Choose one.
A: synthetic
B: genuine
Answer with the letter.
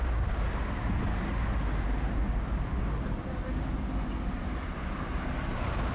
B